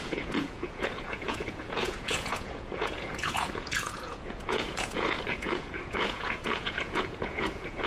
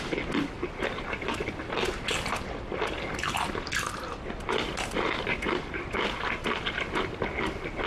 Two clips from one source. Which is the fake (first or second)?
first